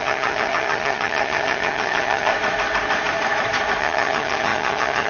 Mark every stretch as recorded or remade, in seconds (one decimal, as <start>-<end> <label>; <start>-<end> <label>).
0.0-2.3 remade; 2.3-3.8 recorded; 3.8-5.1 remade